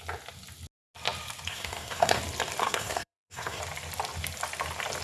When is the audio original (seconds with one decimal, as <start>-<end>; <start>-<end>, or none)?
0.0-1.5; 2.2-2.6; 3.6-5.0